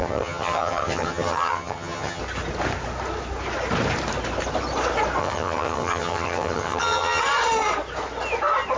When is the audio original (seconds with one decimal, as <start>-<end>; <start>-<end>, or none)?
2.2-5.2; 7.2-8.8